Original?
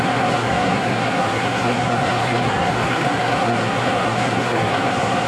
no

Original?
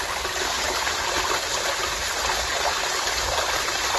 yes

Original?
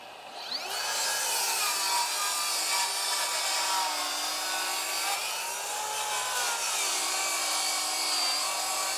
yes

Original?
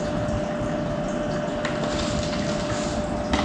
yes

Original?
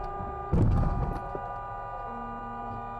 yes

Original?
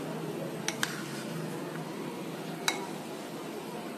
yes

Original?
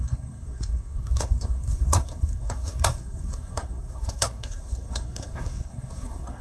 no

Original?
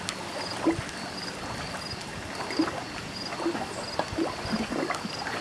yes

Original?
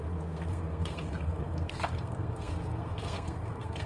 no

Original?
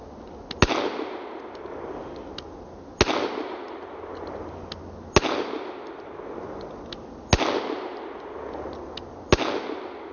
yes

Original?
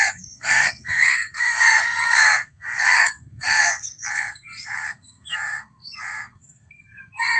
no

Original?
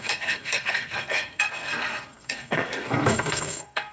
no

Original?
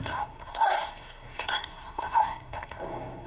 no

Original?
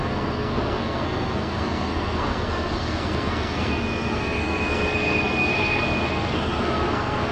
no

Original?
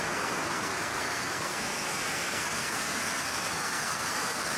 no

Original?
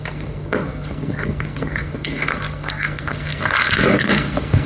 no